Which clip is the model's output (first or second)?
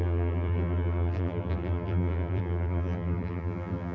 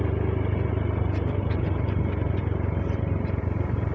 first